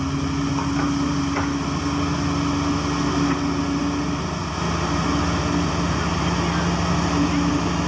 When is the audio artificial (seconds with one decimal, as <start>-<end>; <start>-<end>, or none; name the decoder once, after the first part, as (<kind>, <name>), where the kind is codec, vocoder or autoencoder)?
none